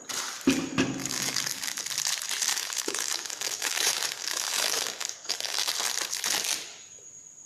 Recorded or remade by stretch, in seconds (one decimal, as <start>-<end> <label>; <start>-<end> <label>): 0.0-1.0 recorded; 1.0-1.8 remade; 1.8-2.5 recorded; 2.5-5.7 remade; 5.7-7.5 recorded